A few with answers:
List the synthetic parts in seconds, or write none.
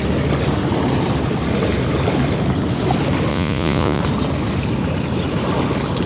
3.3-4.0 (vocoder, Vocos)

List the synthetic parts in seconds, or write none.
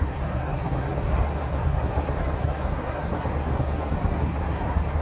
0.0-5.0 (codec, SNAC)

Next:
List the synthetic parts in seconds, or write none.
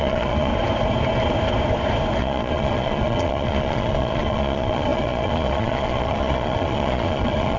0.0-0.5 (vocoder, Vocos); 2.2-7.6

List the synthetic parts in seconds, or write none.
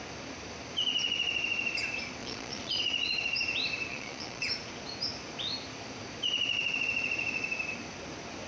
2.2-2.8 (vocoder, Vocos); 3.9-4.5